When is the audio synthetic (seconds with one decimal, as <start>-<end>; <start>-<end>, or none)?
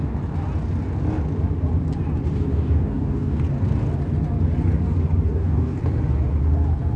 2.5-3.4; 5.3-5.8